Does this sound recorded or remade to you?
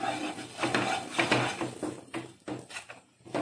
recorded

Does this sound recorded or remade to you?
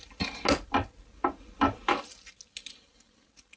recorded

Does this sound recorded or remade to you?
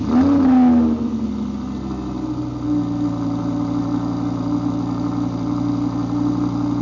recorded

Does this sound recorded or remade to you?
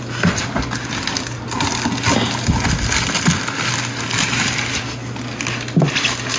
recorded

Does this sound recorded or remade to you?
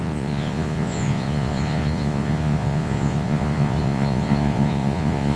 remade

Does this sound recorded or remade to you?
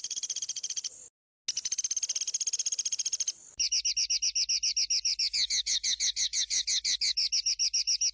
recorded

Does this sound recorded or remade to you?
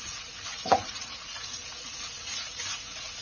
remade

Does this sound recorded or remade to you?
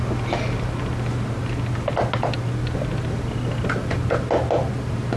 recorded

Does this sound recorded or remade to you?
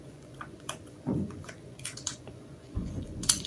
remade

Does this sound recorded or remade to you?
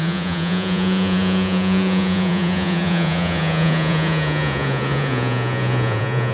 remade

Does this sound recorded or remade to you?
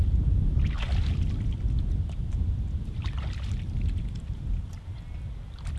recorded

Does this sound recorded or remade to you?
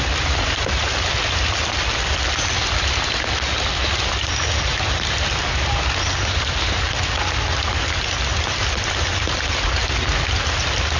recorded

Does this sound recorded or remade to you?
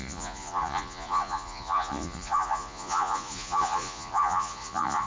remade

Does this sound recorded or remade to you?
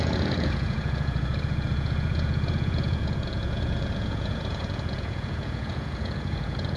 remade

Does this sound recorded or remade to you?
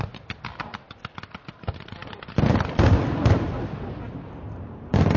recorded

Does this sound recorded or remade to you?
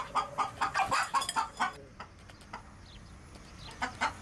recorded